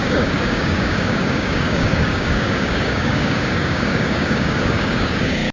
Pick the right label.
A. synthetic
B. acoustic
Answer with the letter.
A